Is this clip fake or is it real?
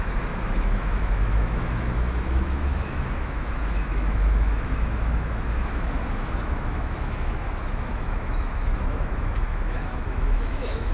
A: fake